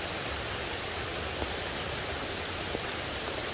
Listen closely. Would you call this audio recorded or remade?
recorded